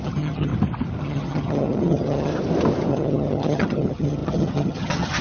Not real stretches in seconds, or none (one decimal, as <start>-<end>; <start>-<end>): 0.0-0.5; 1.0-2.3; 2.9-5.2

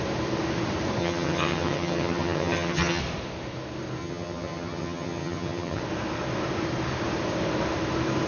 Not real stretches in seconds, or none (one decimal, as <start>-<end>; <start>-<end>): 1.0-3.0; 4.0-5.8

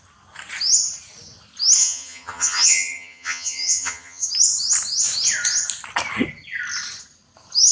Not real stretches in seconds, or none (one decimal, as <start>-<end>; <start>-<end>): 1.8-4.3